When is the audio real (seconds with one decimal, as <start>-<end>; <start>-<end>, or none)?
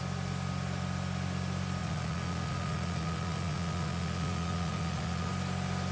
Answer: 0.0-1.8; 5.3-5.9